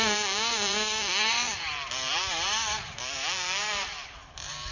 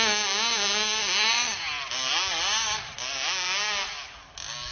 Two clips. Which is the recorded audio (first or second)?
second